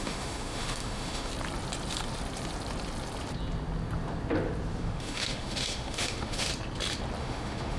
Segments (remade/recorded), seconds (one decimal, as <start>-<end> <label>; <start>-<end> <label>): 0.0-1.3 remade; 1.3-4.8 recorded; 4.8-6.5 remade; 6.5-7.2 recorded; 7.2-7.8 remade